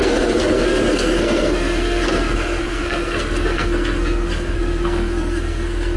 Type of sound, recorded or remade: remade